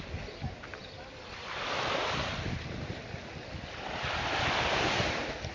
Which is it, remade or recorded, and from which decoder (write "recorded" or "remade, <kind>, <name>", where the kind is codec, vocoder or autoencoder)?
recorded